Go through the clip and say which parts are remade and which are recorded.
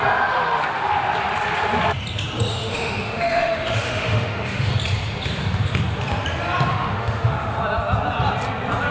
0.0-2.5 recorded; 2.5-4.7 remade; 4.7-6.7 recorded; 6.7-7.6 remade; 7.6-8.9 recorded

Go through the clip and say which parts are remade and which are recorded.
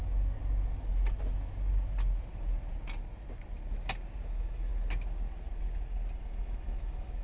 0.0-4.2 recorded; 4.2-4.7 remade; 4.7-6.3 recorded; 6.3-7.2 remade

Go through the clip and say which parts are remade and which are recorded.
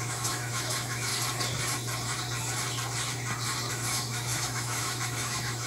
0.0-1.1 remade; 1.1-3.7 recorded; 3.7-5.7 remade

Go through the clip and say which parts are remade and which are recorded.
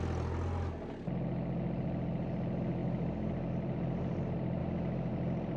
0.0-4.6 recorded; 4.6-5.1 remade; 5.1-5.6 recorded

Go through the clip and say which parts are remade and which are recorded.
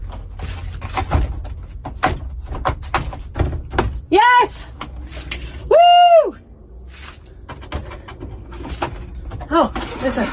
0.0-10.3 recorded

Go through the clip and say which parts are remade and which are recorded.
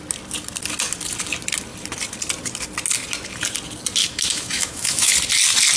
0.0-4.0 recorded; 4.0-5.1 remade; 5.1-5.8 recorded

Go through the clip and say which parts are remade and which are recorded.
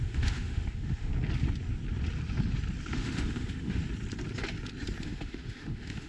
0.0-1.1 remade; 1.1-2.9 recorded; 2.9-3.8 remade; 3.8-5.0 recorded; 5.0-6.1 remade